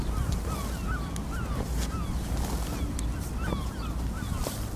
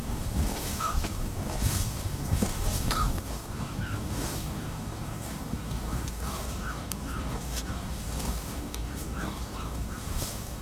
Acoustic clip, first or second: first